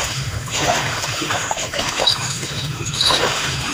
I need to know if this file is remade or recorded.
remade